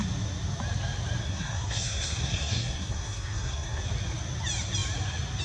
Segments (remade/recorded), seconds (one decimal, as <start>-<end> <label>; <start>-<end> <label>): 0.0-1.2 recorded; 1.2-3.8 remade; 3.8-5.4 recorded

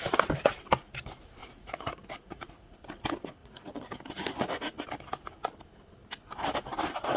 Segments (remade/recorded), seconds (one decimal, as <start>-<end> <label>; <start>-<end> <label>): 0.0-1.4 recorded; 1.4-2.7 remade; 2.7-3.4 recorded; 3.4-4.0 remade; 4.0-7.2 recorded

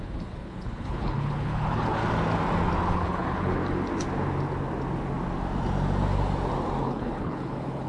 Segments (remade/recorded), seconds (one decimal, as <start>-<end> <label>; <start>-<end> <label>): 0.0-2.0 remade; 2.0-2.9 recorded; 2.9-3.6 remade; 3.6-6.8 recorded; 6.8-7.9 remade

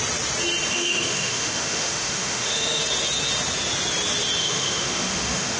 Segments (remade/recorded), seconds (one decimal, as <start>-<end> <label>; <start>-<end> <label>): 0.0-0.7 recorded; 0.7-2.8 remade; 2.8-4.4 recorded; 4.4-5.6 remade

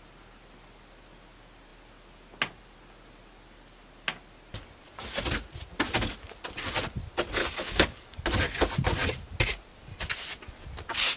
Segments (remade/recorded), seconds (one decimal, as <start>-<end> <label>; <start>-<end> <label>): 0.0-7.4 recorded; 7.4-8.2 remade; 8.2-11.2 recorded

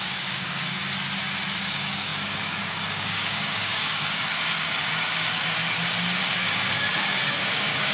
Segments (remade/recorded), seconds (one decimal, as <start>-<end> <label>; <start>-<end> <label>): 0.0-0.8 remade; 0.8-1.6 recorded; 1.6-5.6 remade; 5.6-6.2 recorded; 6.2-7.9 remade

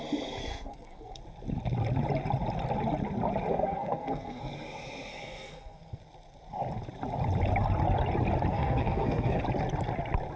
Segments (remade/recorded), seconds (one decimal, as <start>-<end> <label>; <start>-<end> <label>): 0.0-0.4 recorded; 0.4-1.2 remade; 1.2-3.5 recorded; 3.5-4.4 remade; 4.4-5.1 recorded; 5.1-6.0 remade; 6.0-8.5 recorded; 8.5-9.4 remade; 9.4-10.4 recorded

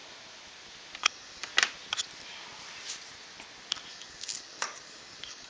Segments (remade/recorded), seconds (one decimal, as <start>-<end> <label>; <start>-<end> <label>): 0.0-1.0 recorded; 1.0-1.5 remade; 1.5-3.9 recorded; 3.9-5.5 remade